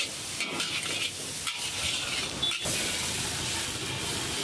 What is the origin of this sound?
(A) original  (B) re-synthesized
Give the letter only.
A